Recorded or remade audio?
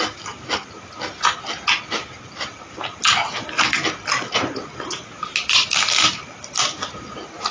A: recorded